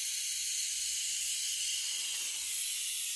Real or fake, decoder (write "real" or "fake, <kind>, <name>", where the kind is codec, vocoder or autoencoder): real